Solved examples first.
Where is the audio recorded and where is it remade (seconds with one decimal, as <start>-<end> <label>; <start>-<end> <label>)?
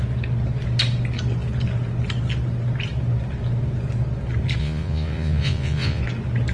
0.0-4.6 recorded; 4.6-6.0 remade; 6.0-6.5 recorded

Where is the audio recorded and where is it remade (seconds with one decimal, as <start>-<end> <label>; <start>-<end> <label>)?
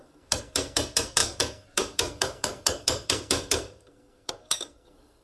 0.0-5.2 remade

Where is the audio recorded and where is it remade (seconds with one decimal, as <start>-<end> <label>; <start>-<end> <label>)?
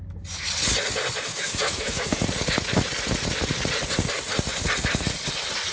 0.0-1.3 recorded; 1.3-2.1 remade; 2.1-5.7 recorded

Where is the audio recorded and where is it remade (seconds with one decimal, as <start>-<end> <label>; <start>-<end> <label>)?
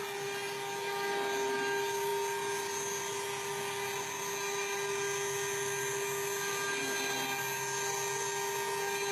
0.0-9.1 recorded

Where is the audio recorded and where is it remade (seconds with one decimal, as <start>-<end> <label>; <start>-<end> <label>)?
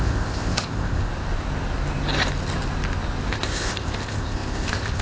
0.0-1.1 remade; 1.1-3.3 recorded; 3.3-5.0 remade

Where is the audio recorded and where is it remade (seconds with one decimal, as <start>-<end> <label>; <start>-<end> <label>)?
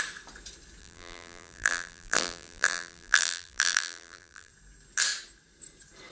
0.0-0.8 recorded; 0.8-4.5 remade; 4.5-6.1 recorded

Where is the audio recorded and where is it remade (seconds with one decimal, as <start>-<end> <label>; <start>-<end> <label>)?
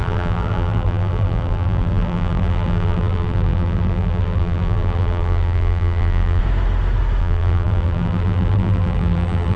0.0-6.4 remade; 6.4-7.2 recorded; 7.2-9.6 remade